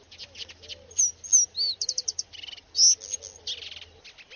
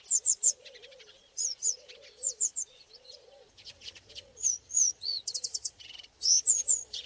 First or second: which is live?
first